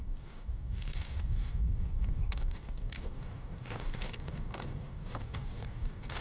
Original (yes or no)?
no